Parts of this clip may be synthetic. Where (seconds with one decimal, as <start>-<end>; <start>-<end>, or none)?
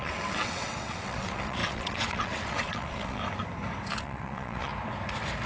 0.0-3.2; 4.0-4.7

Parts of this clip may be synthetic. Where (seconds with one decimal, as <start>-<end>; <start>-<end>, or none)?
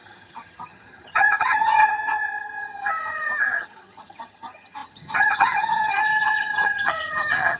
0.0-7.6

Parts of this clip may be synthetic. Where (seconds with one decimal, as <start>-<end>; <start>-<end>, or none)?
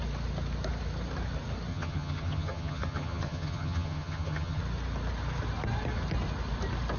1.7-4.6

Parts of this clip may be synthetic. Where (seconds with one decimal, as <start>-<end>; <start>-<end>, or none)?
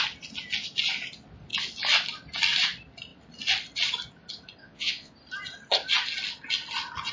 4.6-5.1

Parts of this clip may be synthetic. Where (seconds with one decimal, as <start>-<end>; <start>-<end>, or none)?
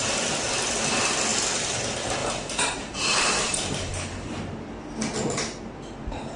2.2-4.4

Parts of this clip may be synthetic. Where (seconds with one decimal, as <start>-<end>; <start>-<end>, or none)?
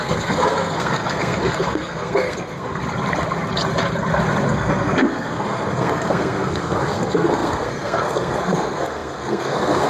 0.0-2.8; 4.5-9.9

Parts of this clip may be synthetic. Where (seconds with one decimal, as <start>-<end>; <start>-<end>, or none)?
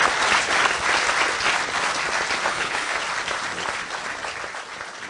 2.5-3.0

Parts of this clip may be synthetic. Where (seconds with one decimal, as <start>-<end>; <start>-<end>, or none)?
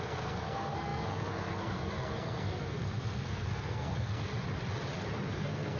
0.0-4.3; 5.3-5.8